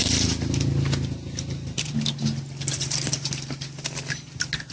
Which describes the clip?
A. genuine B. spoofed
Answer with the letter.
A